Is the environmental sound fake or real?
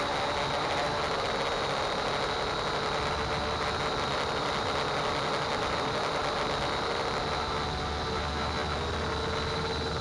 real